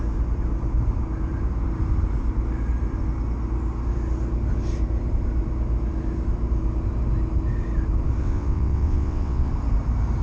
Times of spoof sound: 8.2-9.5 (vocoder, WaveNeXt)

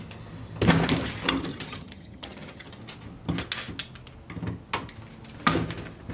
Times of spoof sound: 1.5-2.8 (vocoder, HiFi-GAN)

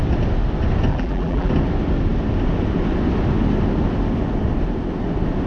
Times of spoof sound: 0.9-1.5 (vocoder, BigVGAN v2)